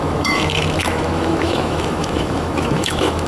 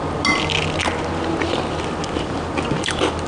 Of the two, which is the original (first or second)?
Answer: second